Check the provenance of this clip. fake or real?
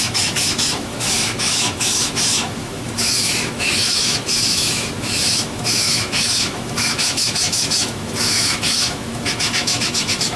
fake